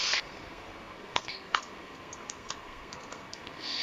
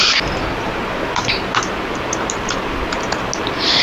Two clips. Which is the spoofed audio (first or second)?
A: first